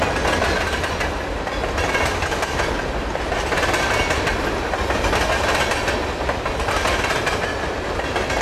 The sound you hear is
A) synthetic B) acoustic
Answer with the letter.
B